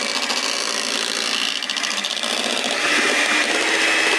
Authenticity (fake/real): real